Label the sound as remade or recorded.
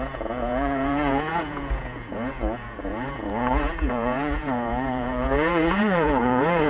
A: remade